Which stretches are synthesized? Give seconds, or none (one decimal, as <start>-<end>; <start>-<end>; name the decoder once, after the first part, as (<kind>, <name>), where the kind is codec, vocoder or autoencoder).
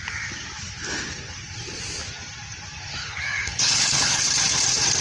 3.0-4.3 (codec, HILCodec)